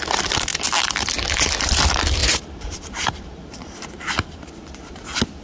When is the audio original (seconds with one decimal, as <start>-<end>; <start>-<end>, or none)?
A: 0.0-2.2; 4.5-5.4